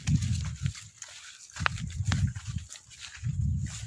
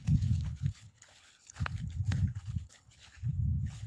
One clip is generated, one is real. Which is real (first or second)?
first